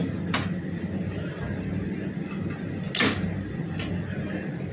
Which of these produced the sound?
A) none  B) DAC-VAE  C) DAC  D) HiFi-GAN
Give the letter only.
A